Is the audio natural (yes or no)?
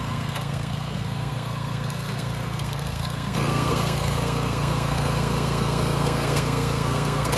no